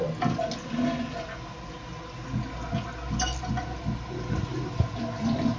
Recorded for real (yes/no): yes